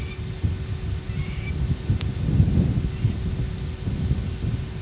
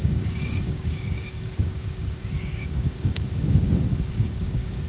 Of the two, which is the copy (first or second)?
second